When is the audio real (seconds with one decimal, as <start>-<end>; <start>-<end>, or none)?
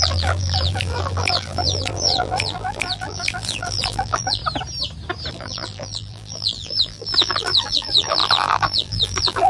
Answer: 4.4-5.3